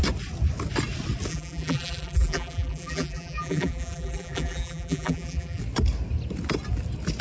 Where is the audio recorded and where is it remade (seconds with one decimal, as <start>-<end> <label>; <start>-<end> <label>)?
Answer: 0.0-1.3 recorded; 1.3-5.6 remade; 5.6-7.2 recorded